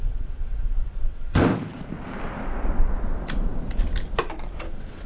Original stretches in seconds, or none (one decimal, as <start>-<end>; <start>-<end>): 1.5-4.6